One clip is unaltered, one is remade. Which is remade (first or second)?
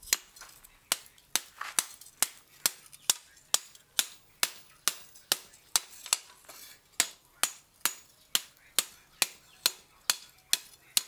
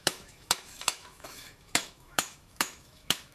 second